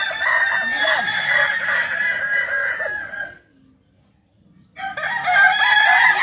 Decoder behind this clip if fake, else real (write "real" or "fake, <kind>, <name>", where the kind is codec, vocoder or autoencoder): real